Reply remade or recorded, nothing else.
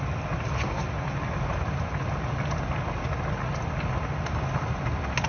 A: recorded